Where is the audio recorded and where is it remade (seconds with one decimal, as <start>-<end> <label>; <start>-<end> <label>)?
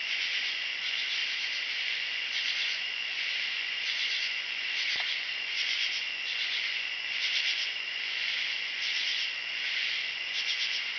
0.0-1.2 remade; 1.2-1.8 recorded; 1.8-11.0 remade